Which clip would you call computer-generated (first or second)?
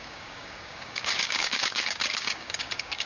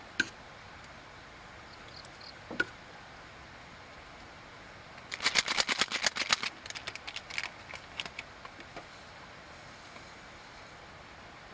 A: first